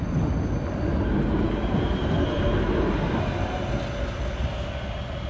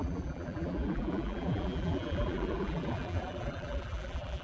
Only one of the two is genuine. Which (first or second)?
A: first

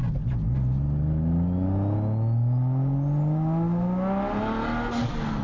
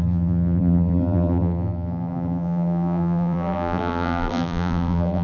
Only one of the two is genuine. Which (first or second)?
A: first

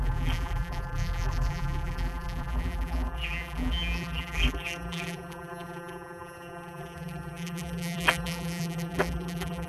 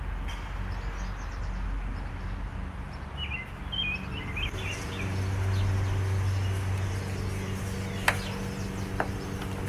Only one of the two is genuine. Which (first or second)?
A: second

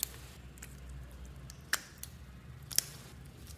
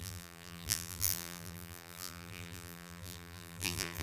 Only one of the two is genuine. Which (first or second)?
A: first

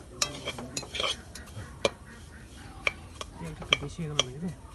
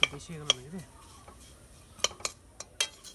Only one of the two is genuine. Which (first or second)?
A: second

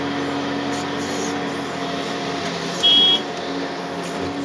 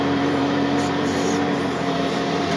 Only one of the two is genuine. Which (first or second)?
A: first